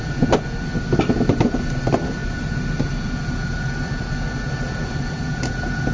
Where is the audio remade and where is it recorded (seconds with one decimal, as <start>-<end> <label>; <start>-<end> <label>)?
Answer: 0.0-2.2 remade; 2.2-5.9 recorded